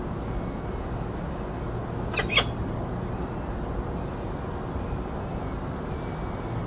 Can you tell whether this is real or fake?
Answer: real